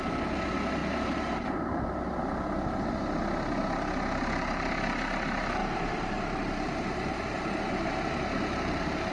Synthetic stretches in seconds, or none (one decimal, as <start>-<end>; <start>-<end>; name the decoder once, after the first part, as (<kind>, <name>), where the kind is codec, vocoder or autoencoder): 0.8-1.7 (vocoder, BigVGAN v2); 5.6-9.1